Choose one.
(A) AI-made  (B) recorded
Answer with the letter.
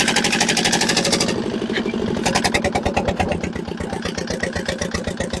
B